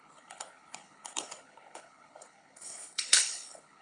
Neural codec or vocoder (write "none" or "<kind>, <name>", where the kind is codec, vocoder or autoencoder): codec, HILCodec